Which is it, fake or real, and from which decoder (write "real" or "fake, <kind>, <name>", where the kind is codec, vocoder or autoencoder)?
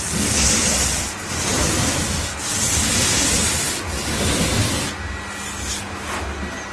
real